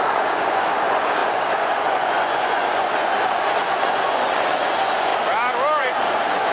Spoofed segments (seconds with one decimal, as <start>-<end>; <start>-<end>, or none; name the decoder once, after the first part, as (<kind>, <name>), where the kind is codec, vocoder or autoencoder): 0.0-5.1 (vocoder, Vocos); 5.8-6.5